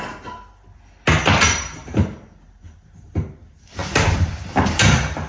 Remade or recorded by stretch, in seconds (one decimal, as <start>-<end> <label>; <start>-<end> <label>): 0.0-5.3 recorded